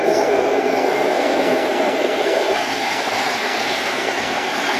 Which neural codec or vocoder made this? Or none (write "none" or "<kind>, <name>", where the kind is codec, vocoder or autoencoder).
codec, SNAC